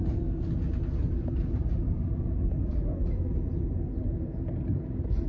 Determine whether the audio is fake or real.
real